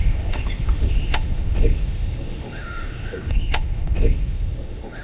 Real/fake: fake